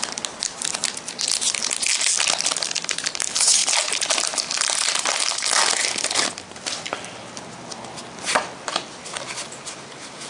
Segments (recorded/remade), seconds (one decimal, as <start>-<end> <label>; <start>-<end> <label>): 0.0-10.3 recorded